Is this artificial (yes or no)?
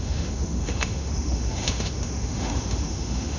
yes